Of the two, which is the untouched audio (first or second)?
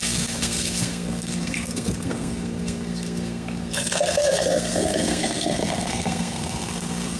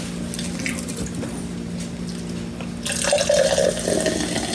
second